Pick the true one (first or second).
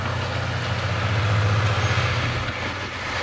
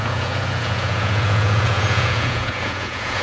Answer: first